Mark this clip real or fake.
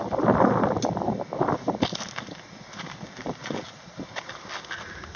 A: real